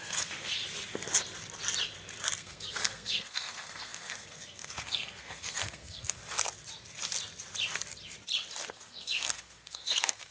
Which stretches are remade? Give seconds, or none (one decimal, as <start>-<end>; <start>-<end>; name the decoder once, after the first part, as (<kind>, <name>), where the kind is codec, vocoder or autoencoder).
0.0-0.6 (codec, SNAC); 2.4-6.2; 8.7-10.3